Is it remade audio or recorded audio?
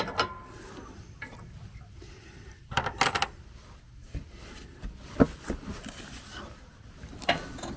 recorded